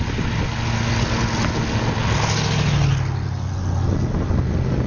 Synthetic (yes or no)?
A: no